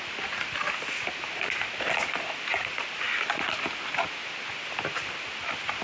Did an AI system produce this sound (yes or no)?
no